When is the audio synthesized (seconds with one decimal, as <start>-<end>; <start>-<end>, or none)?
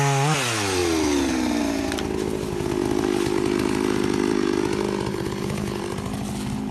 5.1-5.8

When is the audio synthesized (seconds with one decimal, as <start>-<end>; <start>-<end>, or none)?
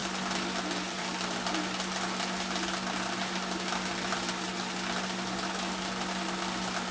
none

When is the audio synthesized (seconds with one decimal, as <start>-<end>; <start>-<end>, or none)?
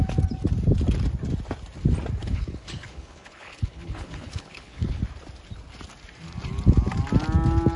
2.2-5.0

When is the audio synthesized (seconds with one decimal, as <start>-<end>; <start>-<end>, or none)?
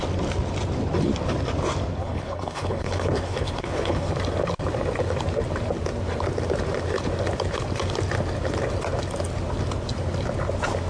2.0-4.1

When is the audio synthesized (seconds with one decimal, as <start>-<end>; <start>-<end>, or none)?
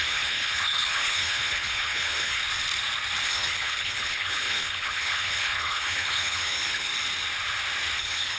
0.0-2.4; 3.2-6.9; 8.0-8.4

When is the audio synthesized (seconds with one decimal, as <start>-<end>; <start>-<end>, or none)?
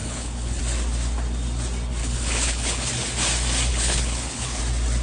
0.0-0.6; 2.0-2.9; 3.7-4.6